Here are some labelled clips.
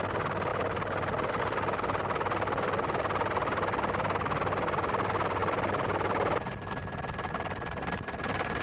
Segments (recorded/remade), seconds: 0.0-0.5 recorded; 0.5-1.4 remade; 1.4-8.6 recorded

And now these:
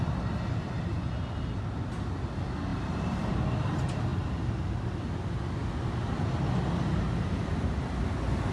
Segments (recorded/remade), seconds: 0.0-2.7 recorded; 2.7-3.4 remade; 3.4-4.1 recorded; 4.1-4.9 remade; 4.9-8.5 recorded

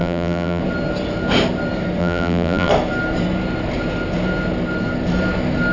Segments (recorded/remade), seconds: 0.0-0.6 remade; 0.6-2.0 recorded; 2.0-2.7 remade; 2.7-5.7 recorded

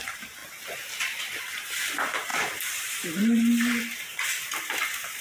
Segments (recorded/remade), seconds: 0.0-0.4 remade; 0.4-1.4 recorded; 1.4-5.2 remade

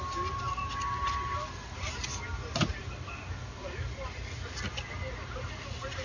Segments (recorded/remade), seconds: 0.0-2.3 recorded; 2.3-2.8 remade; 2.8-6.0 recorded

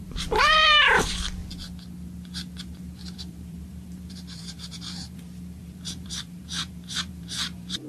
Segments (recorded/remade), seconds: 0.0-1.4 remade; 1.4-2.6 recorded; 2.6-7.9 remade

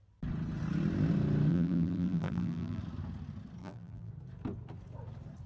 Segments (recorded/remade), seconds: 0.0-1.5 recorded; 1.5-2.8 remade; 2.8-3.6 recorded; 3.6-4.1 remade; 4.1-5.5 recorded